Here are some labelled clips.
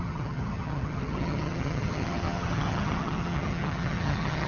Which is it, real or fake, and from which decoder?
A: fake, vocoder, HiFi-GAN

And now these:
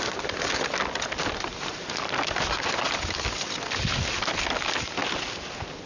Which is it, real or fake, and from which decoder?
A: real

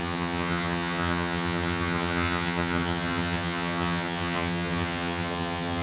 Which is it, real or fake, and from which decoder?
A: fake, vocoder, HiFi-GAN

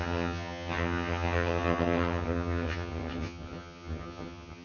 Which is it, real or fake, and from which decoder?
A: fake, vocoder, HiFi-GAN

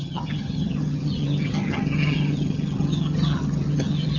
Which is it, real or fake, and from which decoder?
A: fake, vocoder, HiFi-GAN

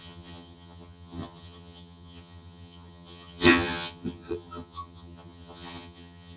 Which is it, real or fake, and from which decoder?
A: fake, vocoder, HiFi-GAN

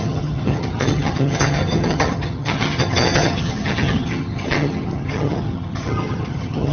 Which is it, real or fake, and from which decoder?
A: fake, vocoder, HiFi-GAN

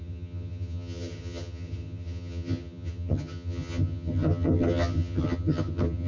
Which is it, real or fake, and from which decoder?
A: fake, vocoder, HiFi-GAN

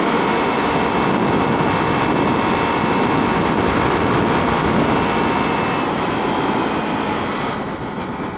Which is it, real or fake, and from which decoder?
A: real